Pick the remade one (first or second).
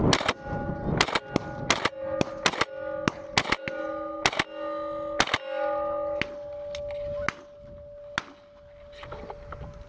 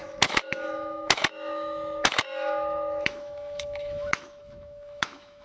second